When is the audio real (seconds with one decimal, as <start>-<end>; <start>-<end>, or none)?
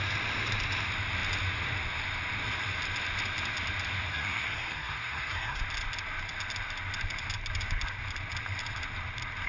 0.0-4.1; 5.6-9.5